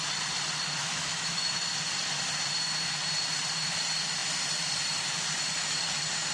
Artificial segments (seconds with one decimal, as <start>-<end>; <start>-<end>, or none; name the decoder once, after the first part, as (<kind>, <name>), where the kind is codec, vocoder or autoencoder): 0.8-1.6 (autoencoder, DAC-VAE)